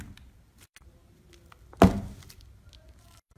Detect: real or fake real